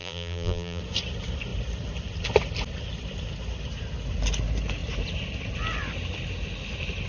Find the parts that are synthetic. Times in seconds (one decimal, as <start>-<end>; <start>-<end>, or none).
0.0-0.8